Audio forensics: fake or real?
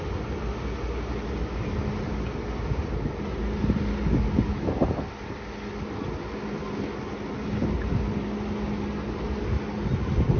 real